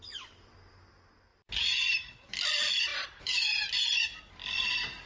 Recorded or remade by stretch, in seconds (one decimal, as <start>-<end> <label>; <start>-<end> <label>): 0.0-1.3 recorded; 1.3-2.1 remade; 2.1-2.9 recorded; 2.9-4.2 remade; 4.2-5.1 recorded